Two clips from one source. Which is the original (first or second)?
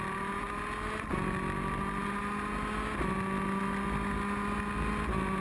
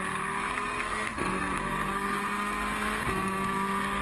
first